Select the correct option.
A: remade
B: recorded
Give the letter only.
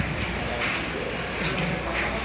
B